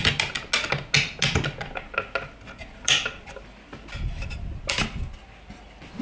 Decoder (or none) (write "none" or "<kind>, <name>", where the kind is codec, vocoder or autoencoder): none